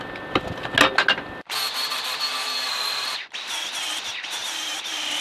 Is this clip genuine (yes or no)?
yes